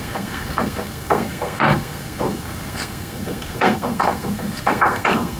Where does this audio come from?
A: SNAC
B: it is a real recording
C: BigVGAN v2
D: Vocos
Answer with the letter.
A